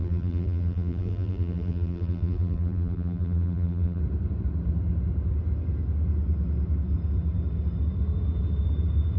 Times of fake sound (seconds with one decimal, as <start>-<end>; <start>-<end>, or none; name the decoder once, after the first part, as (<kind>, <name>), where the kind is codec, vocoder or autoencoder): 0.0-4.0 (vocoder, BigVGAN v2)

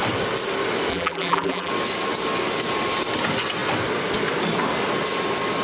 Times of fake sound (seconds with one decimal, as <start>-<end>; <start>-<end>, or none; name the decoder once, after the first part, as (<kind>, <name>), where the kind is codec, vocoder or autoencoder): 0.9-1.7 (vocoder, BigVGAN v2)

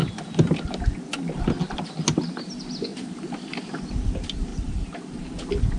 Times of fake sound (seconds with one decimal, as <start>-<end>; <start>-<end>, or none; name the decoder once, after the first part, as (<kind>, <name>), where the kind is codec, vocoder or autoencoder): 2.9-3.8 (vocoder, BigVGAN v2); 4.5-5.3

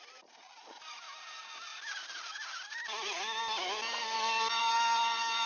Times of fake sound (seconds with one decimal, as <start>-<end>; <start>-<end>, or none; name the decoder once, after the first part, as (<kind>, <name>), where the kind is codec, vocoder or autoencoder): 1.7-3.4 (vocoder, BigVGAN v2); 3.9-4.6

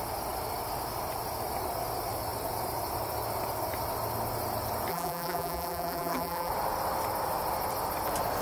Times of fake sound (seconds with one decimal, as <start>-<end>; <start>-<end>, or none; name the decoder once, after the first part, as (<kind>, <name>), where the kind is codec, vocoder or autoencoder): 4.9-6.5 (vocoder, BigVGAN v2)

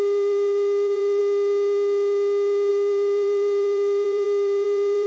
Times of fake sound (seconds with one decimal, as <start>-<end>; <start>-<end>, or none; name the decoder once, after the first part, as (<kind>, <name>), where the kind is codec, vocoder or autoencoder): 0.0-1.2 (vocoder, BigVGAN v2); 2.7-5.1